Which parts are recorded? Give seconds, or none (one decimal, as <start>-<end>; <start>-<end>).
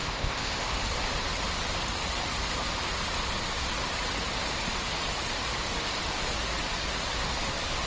0.7-7.9